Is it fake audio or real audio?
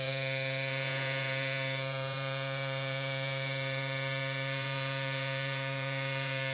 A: fake